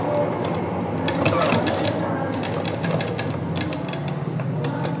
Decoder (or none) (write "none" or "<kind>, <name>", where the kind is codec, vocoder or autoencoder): none